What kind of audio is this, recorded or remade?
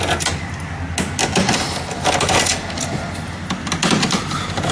recorded